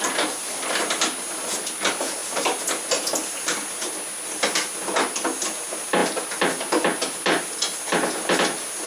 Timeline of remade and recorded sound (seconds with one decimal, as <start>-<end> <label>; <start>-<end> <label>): 0.0-8.9 recorded